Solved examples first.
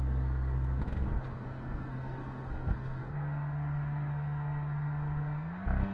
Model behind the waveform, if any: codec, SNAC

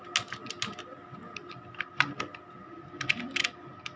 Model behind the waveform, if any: none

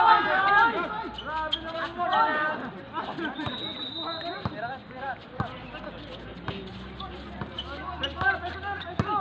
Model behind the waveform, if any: none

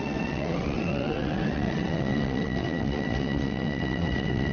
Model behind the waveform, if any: vocoder, WaveNeXt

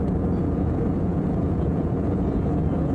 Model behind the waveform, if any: vocoder, Vocos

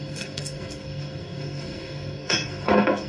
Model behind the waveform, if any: codec, SNAC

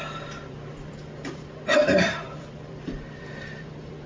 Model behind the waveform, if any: vocoder, BigVGAN v2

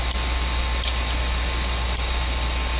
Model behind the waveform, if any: none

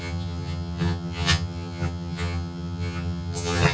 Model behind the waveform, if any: vocoder, HiFi-GAN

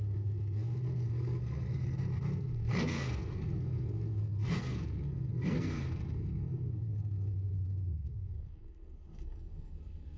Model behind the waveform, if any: codec, SNAC